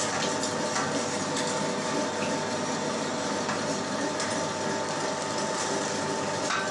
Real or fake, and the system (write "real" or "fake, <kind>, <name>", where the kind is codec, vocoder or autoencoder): real